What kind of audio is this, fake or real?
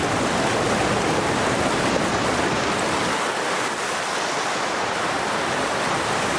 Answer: real